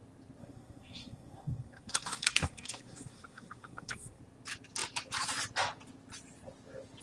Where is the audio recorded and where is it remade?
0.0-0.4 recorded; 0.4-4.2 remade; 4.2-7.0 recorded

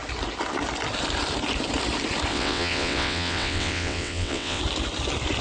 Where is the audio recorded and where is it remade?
0.0-2.3 recorded; 2.3-4.6 remade; 4.6-5.4 recorded

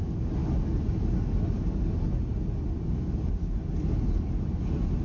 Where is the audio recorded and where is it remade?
0.0-5.0 recorded

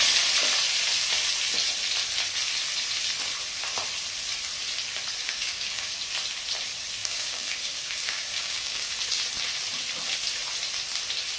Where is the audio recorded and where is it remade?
0.0-5.2 recorded; 5.2-6.0 remade; 6.0-7.0 recorded; 7.0-8.9 remade; 8.9-11.4 recorded

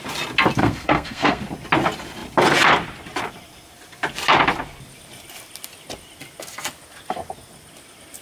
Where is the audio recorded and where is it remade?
0.0-0.6 recorded; 0.6-1.4 remade; 1.4-8.2 recorded

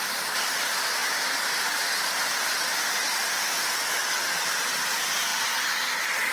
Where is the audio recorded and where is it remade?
0.0-6.3 recorded